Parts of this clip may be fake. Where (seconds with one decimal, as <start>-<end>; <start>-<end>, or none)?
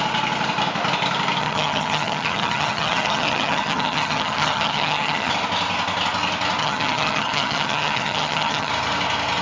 1.4-5.3; 6.6-8.7